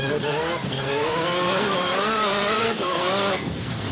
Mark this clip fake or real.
fake